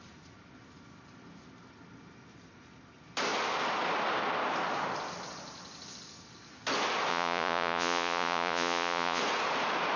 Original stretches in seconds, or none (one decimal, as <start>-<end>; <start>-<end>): 0.0-7.1; 9.2-10.0